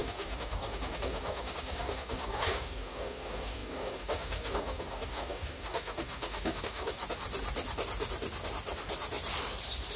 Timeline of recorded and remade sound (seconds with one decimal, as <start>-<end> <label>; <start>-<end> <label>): 0.0-7.0 remade; 7.0-10.0 recorded